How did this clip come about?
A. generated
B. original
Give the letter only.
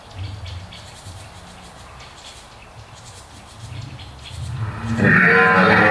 B